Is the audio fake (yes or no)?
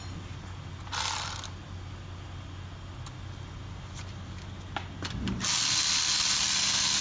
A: no